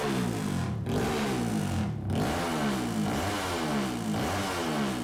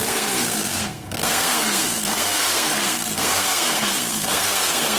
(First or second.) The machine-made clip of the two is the second